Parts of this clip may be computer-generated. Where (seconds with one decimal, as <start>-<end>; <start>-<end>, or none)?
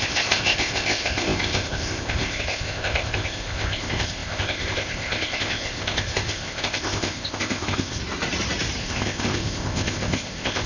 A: 0.0-8.0; 8.8-10.7